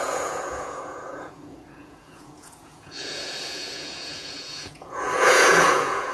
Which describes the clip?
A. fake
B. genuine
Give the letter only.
A